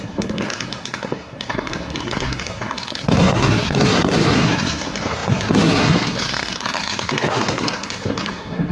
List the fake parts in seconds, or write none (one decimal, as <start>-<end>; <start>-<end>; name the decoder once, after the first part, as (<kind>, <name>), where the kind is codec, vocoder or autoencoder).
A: 0.0-8.7 (codec, SNAC)